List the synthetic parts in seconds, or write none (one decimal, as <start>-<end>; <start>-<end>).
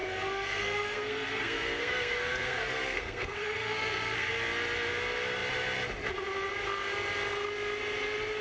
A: 0.0-4.3